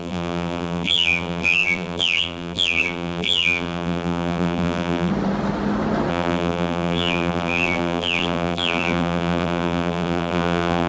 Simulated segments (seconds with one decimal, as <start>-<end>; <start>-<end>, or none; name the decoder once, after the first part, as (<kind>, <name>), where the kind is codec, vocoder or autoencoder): 0.0-5.1 (vocoder, BigVGAN v2); 6.1-10.9